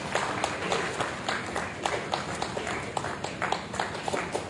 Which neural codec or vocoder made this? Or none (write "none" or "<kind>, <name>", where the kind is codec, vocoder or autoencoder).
none